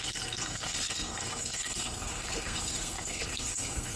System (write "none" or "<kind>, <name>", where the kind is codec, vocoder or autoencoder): codec, SNAC